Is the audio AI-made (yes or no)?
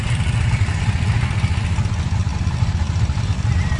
no